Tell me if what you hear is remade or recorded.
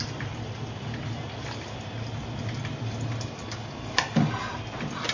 recorded